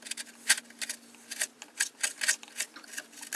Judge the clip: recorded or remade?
recorded